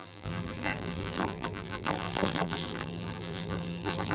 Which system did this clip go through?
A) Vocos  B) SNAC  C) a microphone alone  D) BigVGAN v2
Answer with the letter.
D